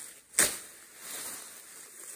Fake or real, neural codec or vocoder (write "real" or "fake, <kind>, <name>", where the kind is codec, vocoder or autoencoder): real